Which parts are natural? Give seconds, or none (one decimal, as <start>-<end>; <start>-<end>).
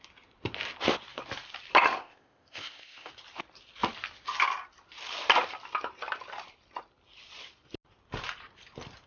0.0-2.0; 3.1-9.1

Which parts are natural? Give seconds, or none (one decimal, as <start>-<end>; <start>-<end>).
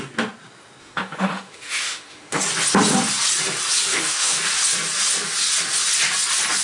0.0-0.8; 2.4-3.9; 4.4-6.6